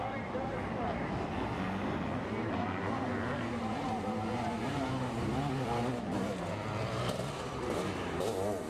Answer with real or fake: real